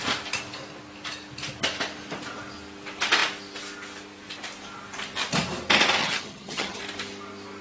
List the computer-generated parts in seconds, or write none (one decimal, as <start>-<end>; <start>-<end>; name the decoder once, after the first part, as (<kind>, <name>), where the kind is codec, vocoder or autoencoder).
6.0-6.8 (vocoder, HiFi-GAN)